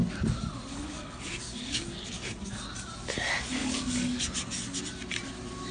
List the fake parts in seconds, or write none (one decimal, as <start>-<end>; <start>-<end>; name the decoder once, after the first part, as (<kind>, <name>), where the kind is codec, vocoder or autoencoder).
0.7-2.6 (codec, DAC); 3.6-4.2